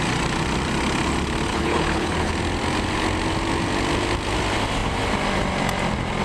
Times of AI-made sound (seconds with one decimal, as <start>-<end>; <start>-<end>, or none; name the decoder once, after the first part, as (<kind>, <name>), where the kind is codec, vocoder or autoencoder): 1.5-2.3 (codec, HILCodec)